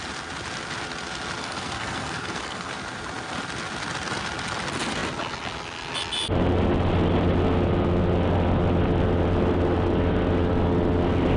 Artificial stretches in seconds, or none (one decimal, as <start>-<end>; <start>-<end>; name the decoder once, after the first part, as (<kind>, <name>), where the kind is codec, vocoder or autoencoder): 1.4-2.7 (codec, SNAC)